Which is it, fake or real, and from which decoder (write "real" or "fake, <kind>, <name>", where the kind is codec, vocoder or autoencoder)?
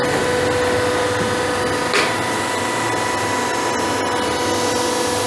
real